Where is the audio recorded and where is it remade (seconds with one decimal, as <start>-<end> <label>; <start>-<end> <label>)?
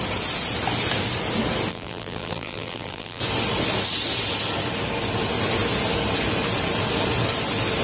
0.0-1.7 recorded; 1.7-3.2 remade; 3.2-7.8 recorded